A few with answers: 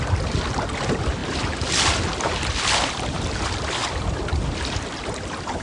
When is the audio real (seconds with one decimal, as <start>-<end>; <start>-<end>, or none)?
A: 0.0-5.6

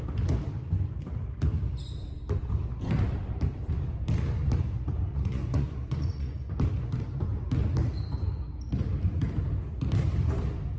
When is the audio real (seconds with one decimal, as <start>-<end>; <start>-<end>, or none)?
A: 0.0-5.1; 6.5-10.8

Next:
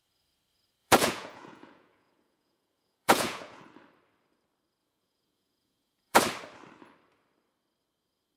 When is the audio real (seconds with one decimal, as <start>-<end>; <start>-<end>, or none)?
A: 0.0-0.8; 3.6-4.8; 6.2-8.4

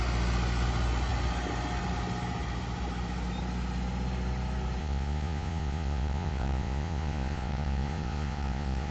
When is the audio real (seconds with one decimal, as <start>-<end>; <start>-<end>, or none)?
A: 0.0-4.8

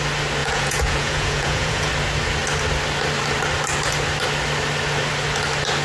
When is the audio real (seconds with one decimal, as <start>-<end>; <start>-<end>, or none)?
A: 0.0-0.4; 1.9-5.8

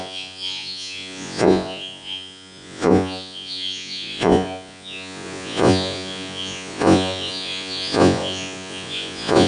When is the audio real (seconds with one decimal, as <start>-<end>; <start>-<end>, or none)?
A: none

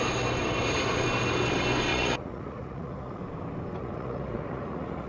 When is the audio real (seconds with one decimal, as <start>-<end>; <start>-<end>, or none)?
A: 0.0-1.9; 3.2-3.8